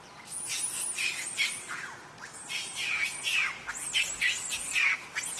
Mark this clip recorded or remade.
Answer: recorded